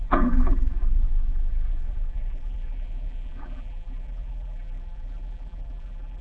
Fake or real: fake